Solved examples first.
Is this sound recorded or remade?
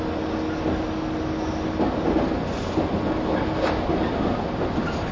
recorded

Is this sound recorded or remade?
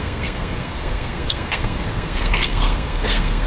remade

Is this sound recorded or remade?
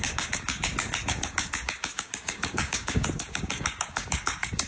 remade